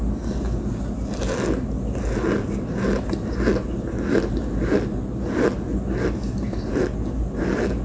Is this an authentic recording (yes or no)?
yes